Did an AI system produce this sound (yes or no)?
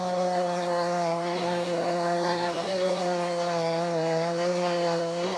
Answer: yes